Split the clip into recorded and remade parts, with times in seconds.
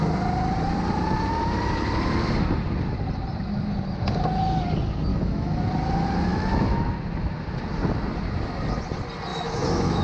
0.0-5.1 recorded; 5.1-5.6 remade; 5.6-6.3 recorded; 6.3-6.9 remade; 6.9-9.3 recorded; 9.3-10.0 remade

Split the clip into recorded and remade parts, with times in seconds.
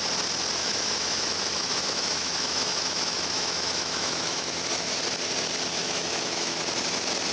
0.0-0.6 recorded; 0.6-5.0 remade; 5.0-5.8 recorded; 5.8-6.6 remade; 6.6-7.3 recorded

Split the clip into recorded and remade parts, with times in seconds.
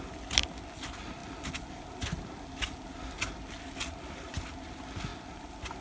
0.0-5.8 recorded